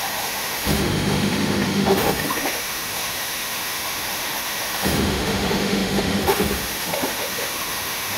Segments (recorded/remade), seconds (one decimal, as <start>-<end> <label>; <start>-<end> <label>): 0.0-8.2 remade

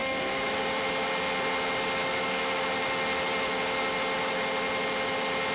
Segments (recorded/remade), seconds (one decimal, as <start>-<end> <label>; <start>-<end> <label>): 0.0-0.6 remade; 0.6-2.0 recorded; 2.0-2.6 remade; 2.6-5.5 recorded

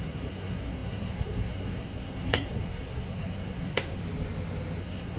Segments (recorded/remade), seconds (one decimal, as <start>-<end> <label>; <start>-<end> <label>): 0.0-4.0 remade; 4.0-4.8 recorded; 4.8-5.2 remade

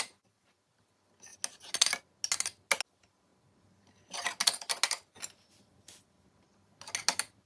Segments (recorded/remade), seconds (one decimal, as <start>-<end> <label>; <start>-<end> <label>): 0.0-7.5 recorded

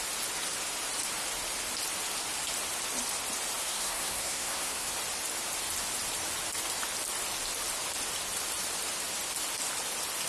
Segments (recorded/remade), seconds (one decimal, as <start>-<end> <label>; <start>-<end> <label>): 0.0-3.6 recorded; 3.6-4.9 remade; 4.9-10.3 recorded

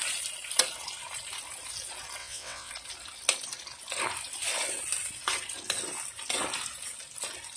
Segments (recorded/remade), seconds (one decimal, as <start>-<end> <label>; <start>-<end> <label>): 0.0-2.2 recorded; 2.2-2.7 remade; 2.7-7.6 recorded